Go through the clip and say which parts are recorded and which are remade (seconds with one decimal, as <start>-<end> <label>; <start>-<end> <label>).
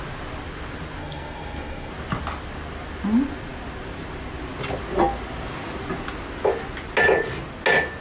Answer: 0.0-1.0 recorded; 1.0-1.9 remade; 1.9-8.0 recorded